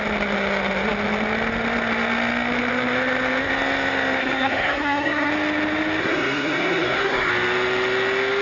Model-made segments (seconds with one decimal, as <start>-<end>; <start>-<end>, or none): 4.2-5.3; 6.0-7.3

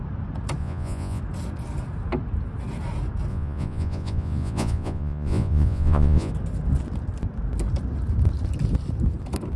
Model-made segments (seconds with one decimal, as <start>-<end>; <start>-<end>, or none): 0.6-1.2; 3.3-6.3

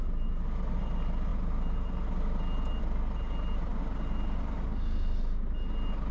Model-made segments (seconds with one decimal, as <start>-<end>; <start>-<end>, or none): none

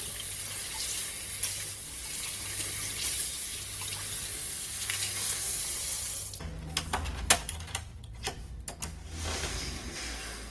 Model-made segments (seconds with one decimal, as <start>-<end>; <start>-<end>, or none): 4.3-5.6; 9.5-10.5

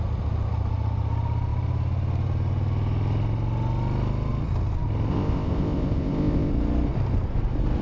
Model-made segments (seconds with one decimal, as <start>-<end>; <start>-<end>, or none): 5.1-6.5

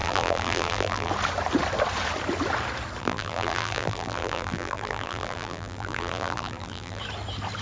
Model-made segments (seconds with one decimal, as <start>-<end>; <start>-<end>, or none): 0.0-1.1; 3.0-7.0